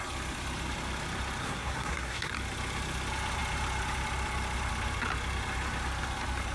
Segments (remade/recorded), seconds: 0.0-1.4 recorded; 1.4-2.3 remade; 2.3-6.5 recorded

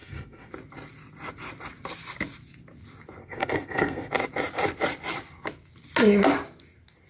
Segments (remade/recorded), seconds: 0.0-0.5 remade; 0.5-3.2 recorded; 3.2-4.1 remade; 4.1-7.1 recorded

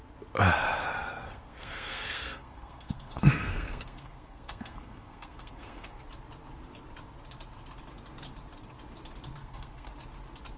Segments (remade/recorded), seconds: 0.0-0.8 recorded; 0.8-6.0 remade; 6.0-9.4 recorded; 9.4-9.9 remade; 9.9-10.6 recorded

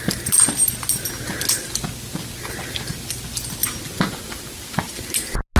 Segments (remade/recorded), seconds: 0.0-5.6 recorded

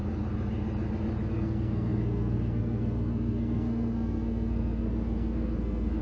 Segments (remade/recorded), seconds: 0.0-1.3 recorded; 1.3-6.0 remade